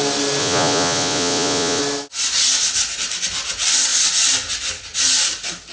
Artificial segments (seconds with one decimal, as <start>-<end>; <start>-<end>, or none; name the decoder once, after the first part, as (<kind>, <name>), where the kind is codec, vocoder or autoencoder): 0.4-1.8 (vocoder, Vocos)